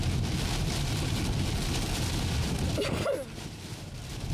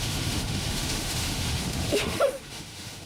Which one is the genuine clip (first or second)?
first